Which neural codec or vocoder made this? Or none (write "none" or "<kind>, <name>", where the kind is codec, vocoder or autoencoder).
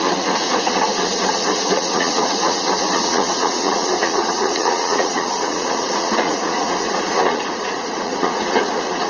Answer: vocoder, Vocos